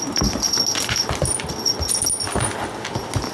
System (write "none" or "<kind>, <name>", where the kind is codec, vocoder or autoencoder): none